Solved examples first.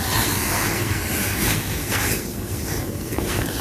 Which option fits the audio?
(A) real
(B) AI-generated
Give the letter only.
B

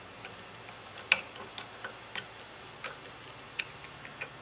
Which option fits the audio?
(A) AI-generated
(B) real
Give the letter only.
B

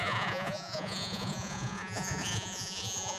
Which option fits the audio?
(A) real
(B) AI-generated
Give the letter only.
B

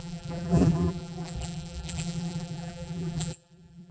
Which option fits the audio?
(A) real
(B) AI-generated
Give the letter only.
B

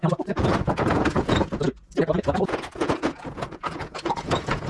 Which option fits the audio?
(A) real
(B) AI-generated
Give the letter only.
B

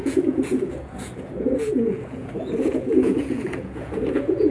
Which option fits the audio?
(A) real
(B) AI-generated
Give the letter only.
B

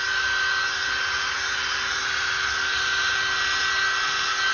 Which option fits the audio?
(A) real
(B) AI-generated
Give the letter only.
A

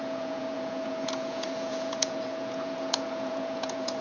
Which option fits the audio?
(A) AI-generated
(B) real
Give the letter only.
A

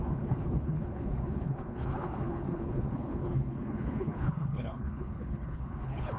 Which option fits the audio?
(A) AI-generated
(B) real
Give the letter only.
A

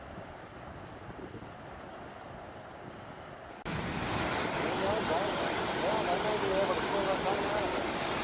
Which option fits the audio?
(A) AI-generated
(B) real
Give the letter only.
B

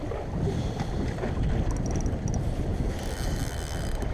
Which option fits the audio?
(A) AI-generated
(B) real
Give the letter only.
B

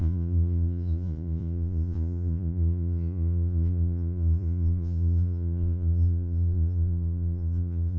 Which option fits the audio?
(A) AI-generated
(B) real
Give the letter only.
A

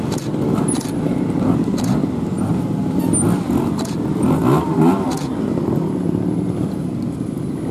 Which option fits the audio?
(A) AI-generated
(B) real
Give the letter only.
B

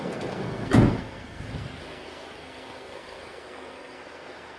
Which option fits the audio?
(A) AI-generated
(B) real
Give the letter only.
A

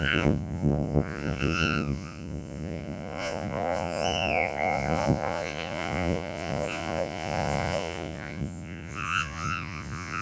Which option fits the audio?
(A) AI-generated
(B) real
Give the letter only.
A